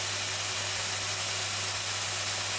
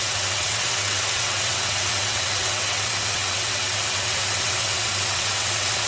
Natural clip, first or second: first